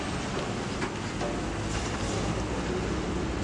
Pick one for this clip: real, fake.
real